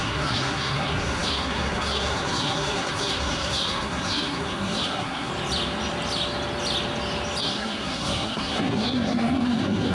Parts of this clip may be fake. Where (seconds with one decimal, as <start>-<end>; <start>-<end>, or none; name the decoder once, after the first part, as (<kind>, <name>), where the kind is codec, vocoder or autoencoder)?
0.0-5.3 (codec, SNAC); 7.4-9.9